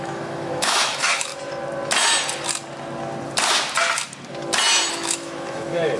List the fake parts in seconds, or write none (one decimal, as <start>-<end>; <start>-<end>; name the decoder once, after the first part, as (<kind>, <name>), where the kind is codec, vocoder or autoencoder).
0.0-1.3 (autoencoder, DAC-VAE); 4.9-6.0